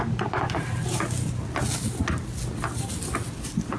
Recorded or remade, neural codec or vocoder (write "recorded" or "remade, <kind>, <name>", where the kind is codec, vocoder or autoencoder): recorded